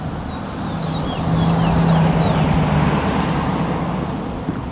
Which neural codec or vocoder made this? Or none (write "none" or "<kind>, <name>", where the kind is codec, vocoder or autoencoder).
none